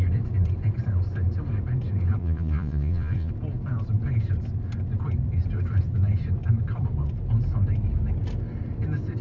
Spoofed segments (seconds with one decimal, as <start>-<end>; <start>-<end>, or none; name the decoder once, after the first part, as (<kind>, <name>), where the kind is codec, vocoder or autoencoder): 2.2-3.3 (vocoder, Vocos)